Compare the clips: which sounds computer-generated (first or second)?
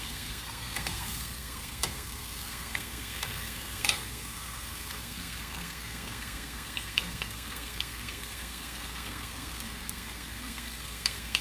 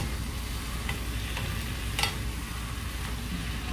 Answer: first